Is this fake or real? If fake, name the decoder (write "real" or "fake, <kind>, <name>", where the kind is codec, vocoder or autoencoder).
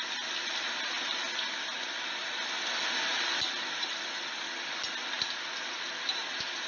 real